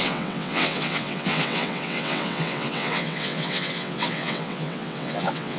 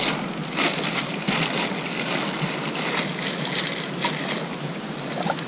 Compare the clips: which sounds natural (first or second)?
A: second